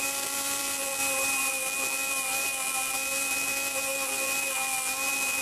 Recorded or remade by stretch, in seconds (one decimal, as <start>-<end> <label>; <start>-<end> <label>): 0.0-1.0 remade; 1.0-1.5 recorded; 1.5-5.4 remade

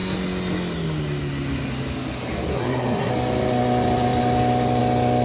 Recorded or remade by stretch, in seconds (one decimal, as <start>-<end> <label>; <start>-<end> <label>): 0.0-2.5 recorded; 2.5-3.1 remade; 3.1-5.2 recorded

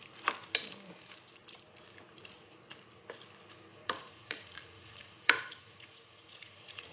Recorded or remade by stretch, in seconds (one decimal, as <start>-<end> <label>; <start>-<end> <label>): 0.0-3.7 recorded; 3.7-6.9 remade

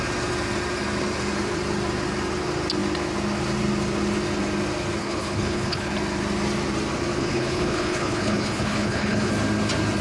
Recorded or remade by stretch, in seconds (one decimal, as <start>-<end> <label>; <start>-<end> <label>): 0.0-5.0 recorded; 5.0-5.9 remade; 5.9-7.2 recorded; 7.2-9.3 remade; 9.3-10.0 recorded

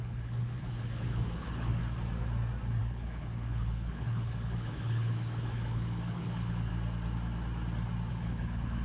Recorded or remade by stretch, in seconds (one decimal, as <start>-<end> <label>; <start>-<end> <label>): 0.0-1.8 remade; 1.8-2.8 recorded; 2.8-6.7 remade; 6.7-8.1 recorded; 8.1-8.8 remade

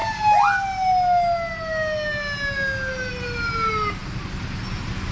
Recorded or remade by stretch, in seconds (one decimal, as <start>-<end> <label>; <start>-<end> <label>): 0.0-5.1 recorded